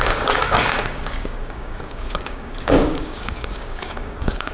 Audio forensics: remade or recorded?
remade